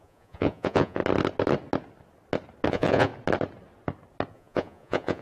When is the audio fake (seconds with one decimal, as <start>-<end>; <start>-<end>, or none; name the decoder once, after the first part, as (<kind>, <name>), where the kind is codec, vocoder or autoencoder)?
0.0-1.0 (vocoder, Vocos); 2.7-3.1; 4.3-5.2